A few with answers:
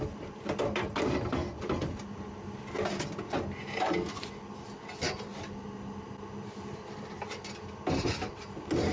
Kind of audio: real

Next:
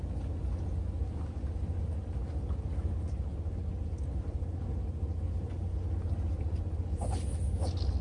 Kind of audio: real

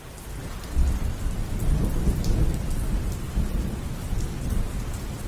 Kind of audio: real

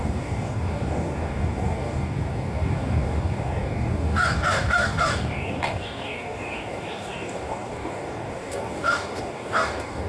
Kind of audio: fake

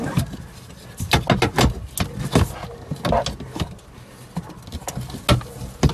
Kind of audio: real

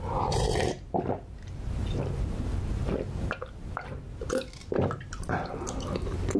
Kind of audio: real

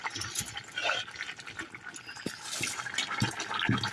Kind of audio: real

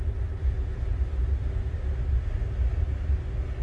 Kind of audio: real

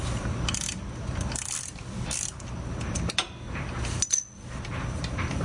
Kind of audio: real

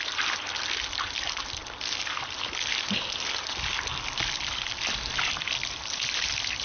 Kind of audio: real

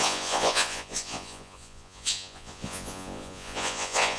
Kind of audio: fake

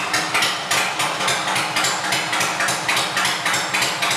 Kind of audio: real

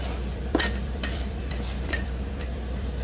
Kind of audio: fake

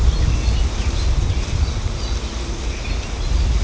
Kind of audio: real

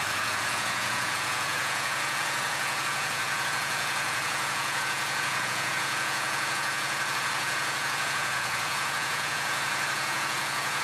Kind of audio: fake